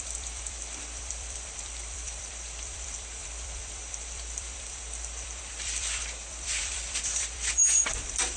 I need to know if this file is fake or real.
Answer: fake